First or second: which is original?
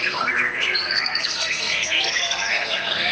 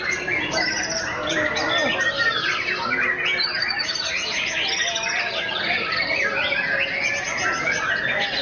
second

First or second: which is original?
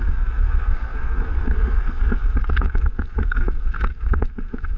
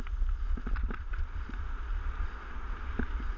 second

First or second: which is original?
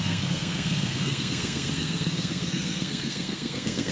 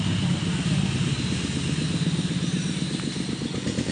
second